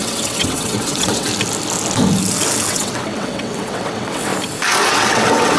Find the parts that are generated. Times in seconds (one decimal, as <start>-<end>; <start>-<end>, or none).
0.0-1.3; 2.7-4.3; 4.9-5.6